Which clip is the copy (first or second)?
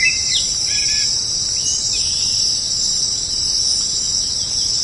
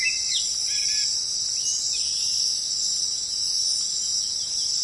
first